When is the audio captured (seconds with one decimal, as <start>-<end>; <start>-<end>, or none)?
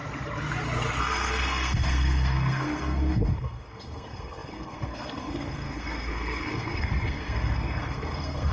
0.0-1.0